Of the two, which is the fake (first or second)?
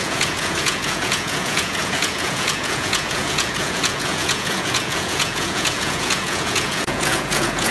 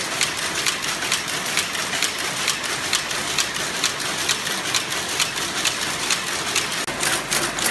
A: first